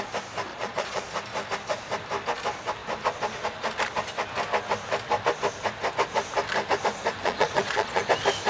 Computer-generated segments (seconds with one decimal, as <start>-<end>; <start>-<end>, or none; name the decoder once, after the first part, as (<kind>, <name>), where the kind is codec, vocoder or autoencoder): 0.5-1.0 (vocoder, Vocos); 7.2-8.0